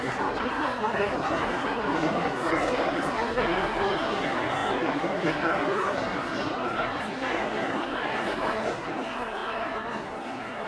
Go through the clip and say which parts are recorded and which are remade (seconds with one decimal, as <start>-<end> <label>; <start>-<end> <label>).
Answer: 0.0-10.7 remade